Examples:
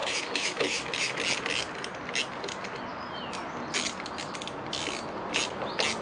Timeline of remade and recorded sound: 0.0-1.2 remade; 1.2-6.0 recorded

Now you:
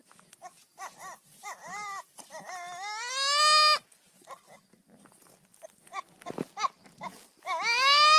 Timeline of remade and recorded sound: 0.0-0.4 recorded; 0.4-2.3 remade; 2.3-8.2 recorded

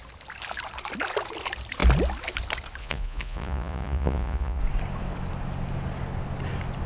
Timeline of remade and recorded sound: 0.0-2.8 recorded; 2.8-4.6 remade; 4.6-6.9 recorded

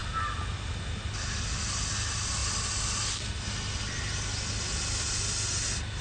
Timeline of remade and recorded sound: 0.0-6.0 recorded

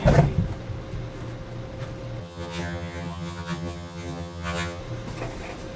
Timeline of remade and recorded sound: 0.0-2.2 recorded; 2.2-4.8 remade; 4.8-5.8 recorded